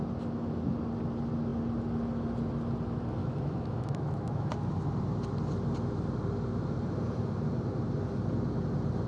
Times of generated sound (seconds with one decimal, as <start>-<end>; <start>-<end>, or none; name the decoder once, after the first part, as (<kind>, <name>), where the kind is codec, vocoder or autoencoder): 3.2-4.5 (autoencoder, DAC-VAE)